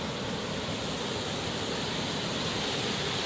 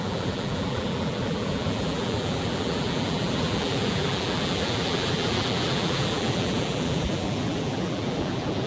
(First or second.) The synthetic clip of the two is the second